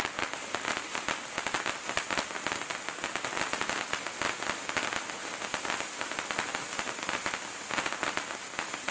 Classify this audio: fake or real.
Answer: real